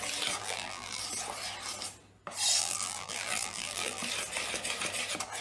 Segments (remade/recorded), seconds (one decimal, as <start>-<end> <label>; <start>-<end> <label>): 0.0-0.4 recorded; 0.4-1.0 remade; 1.0-2.6 recorded; 2.6-4.0 remade; 4.0-5.4 recorded